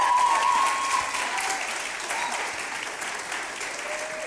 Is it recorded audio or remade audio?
recorded